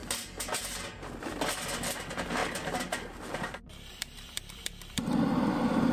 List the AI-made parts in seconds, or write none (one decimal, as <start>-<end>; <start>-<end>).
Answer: 1.5-5.9